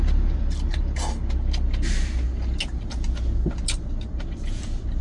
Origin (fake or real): real